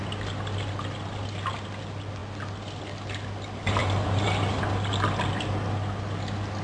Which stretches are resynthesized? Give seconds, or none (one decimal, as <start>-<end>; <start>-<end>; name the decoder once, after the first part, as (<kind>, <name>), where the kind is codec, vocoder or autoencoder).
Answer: 3.8-4.6 (vocoder, BigVGAN v2)